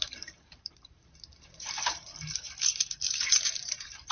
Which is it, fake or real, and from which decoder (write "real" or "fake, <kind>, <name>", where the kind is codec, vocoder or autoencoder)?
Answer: fake, vocoder, BigVGAN v2